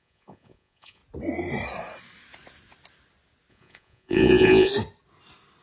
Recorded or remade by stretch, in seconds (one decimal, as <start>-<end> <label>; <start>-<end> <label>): 0.0-1.0 remade; 1.0-3.5 recorded; 3.5-4.7 remade; 4.7-5.6 recorded